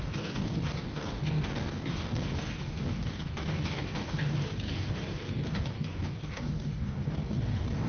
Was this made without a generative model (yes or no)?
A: no